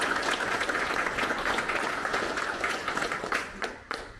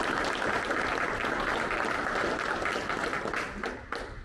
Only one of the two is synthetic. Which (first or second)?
first